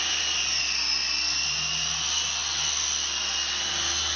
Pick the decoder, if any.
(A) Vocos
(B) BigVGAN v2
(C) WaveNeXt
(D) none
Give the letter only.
D